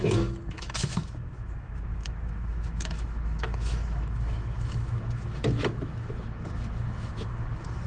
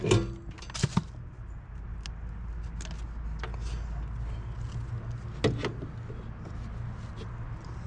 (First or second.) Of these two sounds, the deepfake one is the first